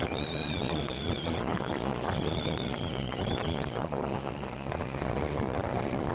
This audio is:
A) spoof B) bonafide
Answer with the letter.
A